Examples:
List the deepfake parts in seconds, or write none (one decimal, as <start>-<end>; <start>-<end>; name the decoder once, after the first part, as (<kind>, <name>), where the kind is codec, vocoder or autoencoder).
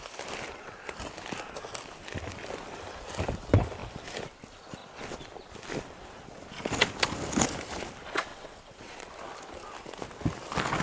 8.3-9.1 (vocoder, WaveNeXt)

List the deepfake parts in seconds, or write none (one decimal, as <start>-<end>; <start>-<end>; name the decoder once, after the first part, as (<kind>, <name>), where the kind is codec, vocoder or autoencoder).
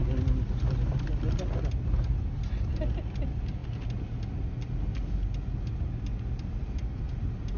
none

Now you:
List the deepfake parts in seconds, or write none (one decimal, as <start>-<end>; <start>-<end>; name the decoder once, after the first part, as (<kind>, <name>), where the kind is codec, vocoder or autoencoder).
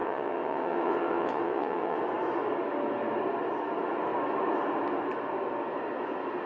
0.0-2.0 (vocoder, WaveNeXt)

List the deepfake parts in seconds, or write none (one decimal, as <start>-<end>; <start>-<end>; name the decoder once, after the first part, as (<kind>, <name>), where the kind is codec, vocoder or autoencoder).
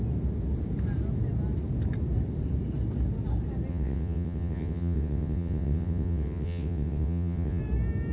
3.7-7.6 (vocoder, WaveNeXt)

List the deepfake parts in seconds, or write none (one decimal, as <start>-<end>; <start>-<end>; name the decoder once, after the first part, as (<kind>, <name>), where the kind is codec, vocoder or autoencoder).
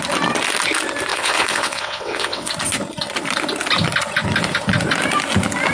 1.1-2.5 (vocoder, WaveNeXt)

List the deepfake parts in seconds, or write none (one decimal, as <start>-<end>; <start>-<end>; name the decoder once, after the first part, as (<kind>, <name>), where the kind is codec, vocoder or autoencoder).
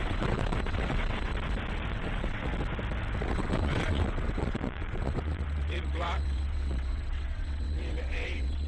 0.0-1.3 (vocoder, WaveNeXt); 1.9-2.5; 3.2-8.7